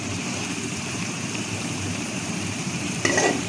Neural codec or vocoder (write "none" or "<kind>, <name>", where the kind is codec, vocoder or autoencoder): vocoder, BigVGAN v2